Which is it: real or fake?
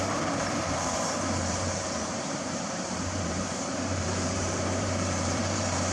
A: fake